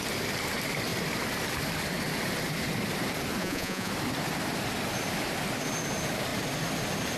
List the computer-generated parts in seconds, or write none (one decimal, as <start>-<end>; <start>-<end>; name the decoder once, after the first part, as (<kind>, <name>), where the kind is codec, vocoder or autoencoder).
3.4-3.9 (vocoder, Vocos)